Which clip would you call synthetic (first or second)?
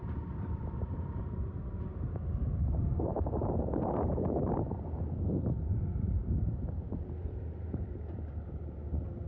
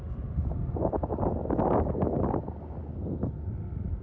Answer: first